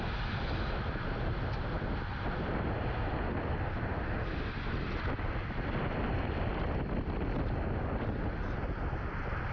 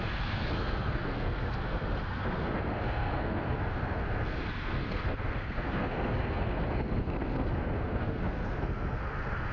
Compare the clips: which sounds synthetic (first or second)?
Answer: second